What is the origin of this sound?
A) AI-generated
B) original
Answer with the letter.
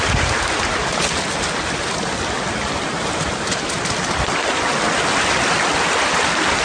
B